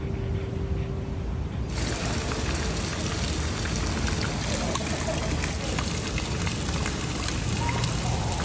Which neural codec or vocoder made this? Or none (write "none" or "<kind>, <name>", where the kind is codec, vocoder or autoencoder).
none